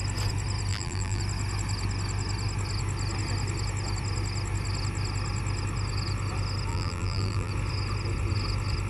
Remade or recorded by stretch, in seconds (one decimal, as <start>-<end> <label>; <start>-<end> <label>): 0.0-0.7 recorded; 0.7-1.2 remade; 1.2-6.7 recorded; 6.7-7.5 remade; 7.5-8.9 recorded